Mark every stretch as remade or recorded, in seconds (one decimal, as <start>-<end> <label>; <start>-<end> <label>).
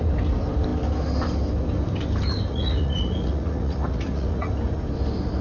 0.0-2.5 recorded; 2.5-4.5 remade; 4.5-5.4 recorded